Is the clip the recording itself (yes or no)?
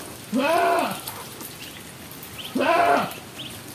yes